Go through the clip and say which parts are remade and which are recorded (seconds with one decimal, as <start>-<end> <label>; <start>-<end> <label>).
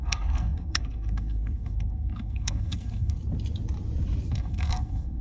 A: 0.0-3.2 remade; 3.2-4.3 recorded; 4.3-5.2 remade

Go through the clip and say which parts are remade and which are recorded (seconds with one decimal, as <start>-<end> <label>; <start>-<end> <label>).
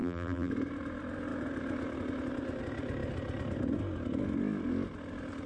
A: 0.0-0.5 remade; 0.5-5.5 recorded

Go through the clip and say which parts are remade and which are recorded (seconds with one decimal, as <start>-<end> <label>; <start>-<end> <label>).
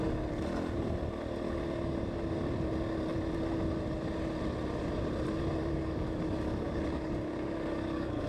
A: 0.0-5.6 recorded; 5.6-8.3 remade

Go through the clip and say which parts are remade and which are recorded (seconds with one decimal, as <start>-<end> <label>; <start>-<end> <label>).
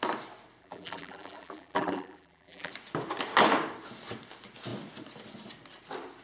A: 0.0-0.6 recorded; 0.6-2.7 remade; 2.7-6.2 recorded